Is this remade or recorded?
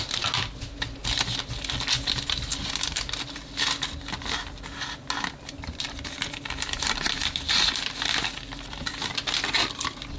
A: recorded